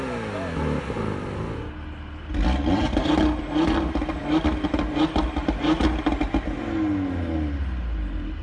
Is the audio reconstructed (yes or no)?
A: no